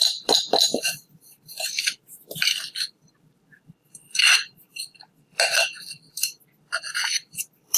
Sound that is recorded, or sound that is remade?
remade